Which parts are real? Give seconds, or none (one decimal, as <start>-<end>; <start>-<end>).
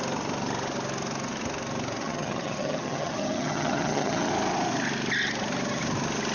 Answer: 0.0-2.0; 4.3-6.3